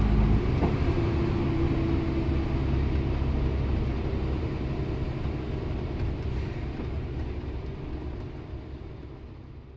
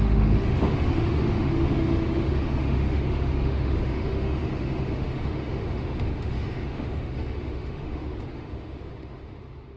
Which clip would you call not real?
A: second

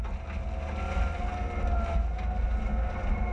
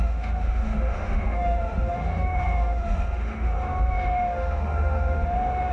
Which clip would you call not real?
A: second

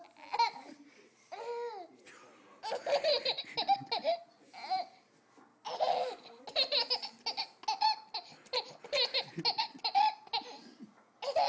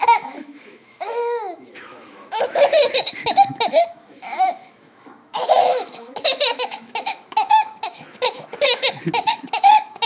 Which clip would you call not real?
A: second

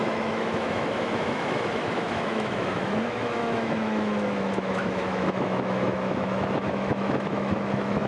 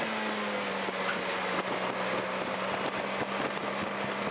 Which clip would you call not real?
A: first